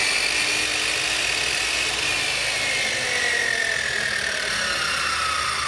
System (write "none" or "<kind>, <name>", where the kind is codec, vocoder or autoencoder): none